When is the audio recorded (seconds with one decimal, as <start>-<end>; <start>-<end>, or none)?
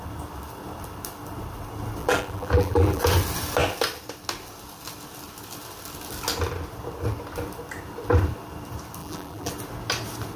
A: 0.0-2.0; 3.0-9.0; 9.5-10.4